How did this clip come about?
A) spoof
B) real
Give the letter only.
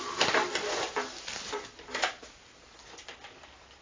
B